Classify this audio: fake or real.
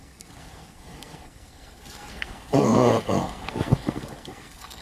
fake